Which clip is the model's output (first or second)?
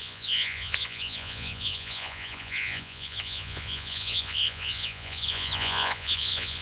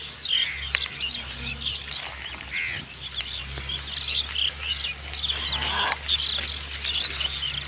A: first